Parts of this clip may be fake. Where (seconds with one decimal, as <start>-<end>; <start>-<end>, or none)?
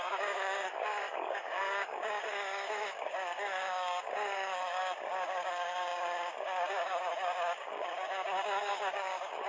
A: 0.0-9.5